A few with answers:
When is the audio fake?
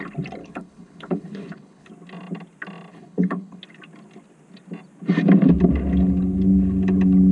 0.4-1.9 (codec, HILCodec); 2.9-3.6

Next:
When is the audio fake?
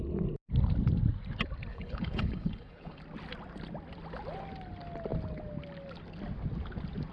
1.7-3.0 (codec, HILCodec)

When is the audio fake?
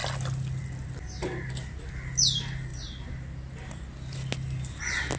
none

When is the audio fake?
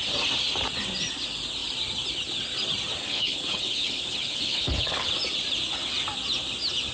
3.0-5.1 (codec, HILCodec)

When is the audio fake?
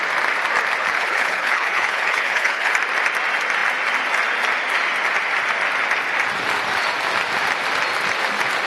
0.8-2.7 (codec, HILCodec)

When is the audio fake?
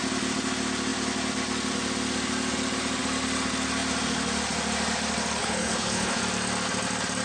5.4-6.2 (codec, HILCodec)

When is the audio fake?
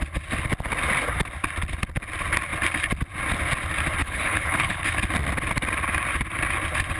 4.0-4.8 (codec, HILCodec)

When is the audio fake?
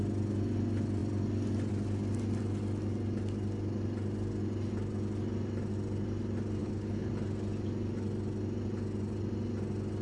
6.6-7.1 (codec, HILCodec)